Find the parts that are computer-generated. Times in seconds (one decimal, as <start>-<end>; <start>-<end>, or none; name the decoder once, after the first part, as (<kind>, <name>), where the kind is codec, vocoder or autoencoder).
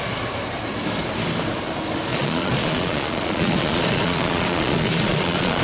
2.1-5.6 (vocoder, Vocos)